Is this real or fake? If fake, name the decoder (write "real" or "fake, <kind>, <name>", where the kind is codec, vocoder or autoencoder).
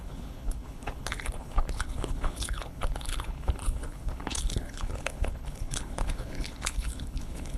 fake, codec, HILCodec